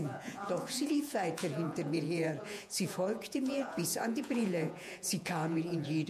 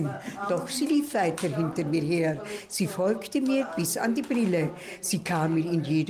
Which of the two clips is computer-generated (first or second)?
first